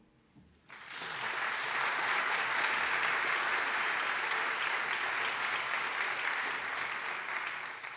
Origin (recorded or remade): recorded